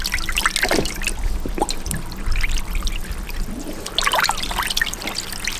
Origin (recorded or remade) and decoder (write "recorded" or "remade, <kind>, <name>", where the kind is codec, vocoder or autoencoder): recorded